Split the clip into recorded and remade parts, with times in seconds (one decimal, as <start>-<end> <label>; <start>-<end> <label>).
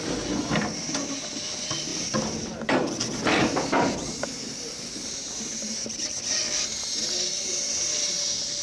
0.0-1.9 recorded; 1.9-6.6 remade; 6.6-8.6 recorded